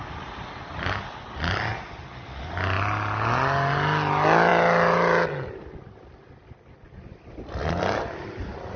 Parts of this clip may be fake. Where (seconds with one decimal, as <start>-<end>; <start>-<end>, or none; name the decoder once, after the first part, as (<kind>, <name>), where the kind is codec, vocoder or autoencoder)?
none